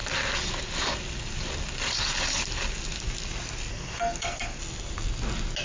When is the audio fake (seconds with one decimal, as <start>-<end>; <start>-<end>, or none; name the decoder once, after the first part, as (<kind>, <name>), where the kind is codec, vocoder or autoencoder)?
3.7-4.6 (codec, SNAC)